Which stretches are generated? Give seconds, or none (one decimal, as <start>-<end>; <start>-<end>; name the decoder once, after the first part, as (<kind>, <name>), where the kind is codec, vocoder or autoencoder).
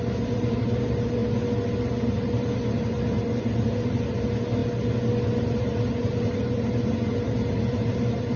0.0-1.2 (vocoder, BigVGAN v2); 2.0-4.6; 5.5-8.4